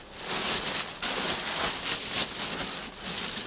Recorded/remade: recorded